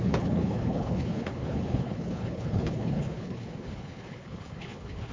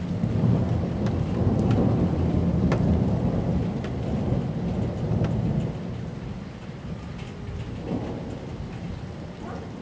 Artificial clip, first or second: first